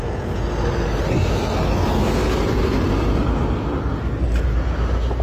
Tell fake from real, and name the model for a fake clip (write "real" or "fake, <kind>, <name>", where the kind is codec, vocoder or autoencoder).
real